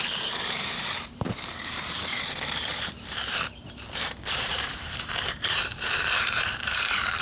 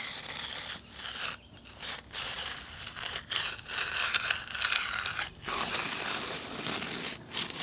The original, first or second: second